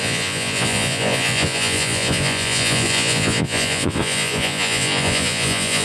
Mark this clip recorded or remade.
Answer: remade